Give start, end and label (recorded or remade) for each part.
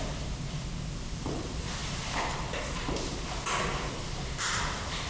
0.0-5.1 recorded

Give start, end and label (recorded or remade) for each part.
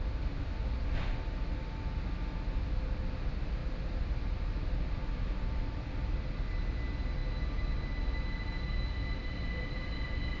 0.0-3.6 recorded; 3.6-5.9 remade; 5.9-10.4 recorded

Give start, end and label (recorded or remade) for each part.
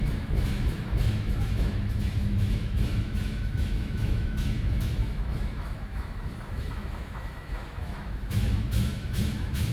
0.0-9.7 remade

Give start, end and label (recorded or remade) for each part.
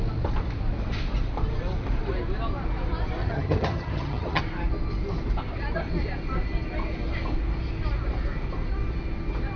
0.0-3.2 recorded; 3.2-4.4 remade; 4.4-9.6 recorded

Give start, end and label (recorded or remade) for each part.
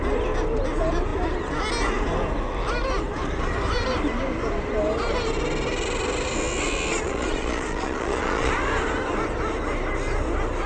0.0-6.9 recorded; 6.9-8.5 remade; 8.5-10.7 recorded